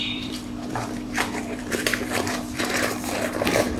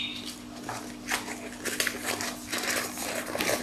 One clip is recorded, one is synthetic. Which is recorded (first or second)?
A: second